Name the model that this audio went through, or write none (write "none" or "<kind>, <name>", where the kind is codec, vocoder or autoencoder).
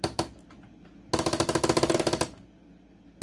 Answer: none